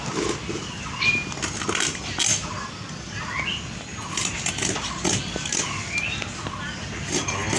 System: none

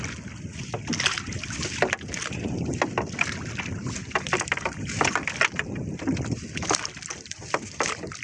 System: none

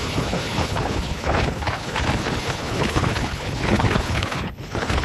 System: codec, HILCodec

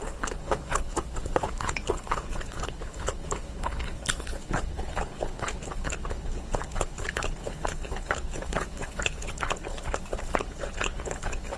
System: codec, HILCodec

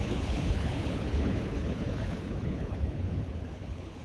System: codec, HILCodec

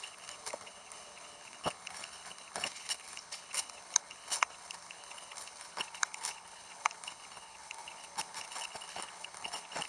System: codec, HILCodec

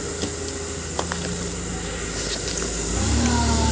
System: none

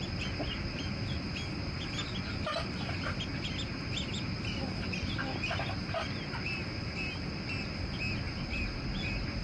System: none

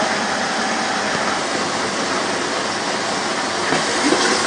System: none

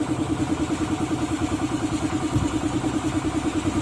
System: none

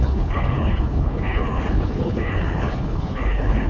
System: codec, HILCodec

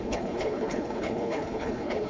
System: codec, HILCodec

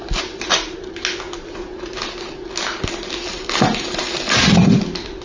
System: none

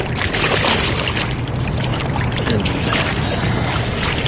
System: none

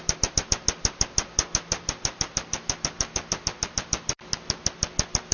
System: none